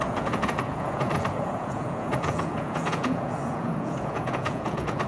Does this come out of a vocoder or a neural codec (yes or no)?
yes